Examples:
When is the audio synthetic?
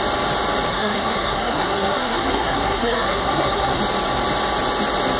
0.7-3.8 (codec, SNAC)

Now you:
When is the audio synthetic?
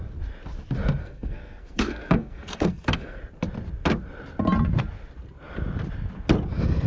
1.0-3.2 (codec, SNAC)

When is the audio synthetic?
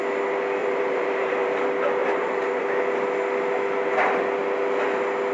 0.6-1.6 (vocoder, BigVGAN v2); 2.0-2.7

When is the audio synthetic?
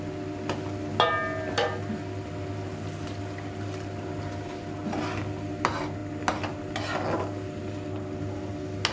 none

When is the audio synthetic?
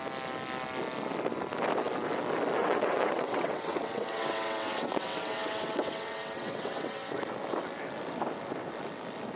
2.6-7.2 (vocoder, WaveNeXt)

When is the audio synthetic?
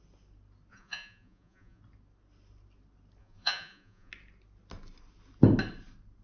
0.7-1.8 (vocoder, Vocos); 3.2-4.1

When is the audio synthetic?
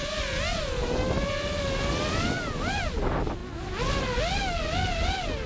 none